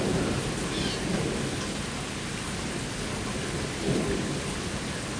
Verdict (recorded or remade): recorded